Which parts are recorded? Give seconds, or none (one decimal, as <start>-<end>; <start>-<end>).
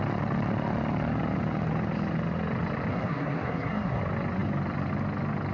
0.0-2.9; 4.0-5.5